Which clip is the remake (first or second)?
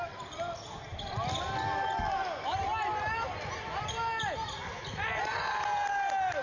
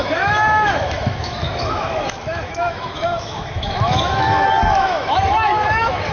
second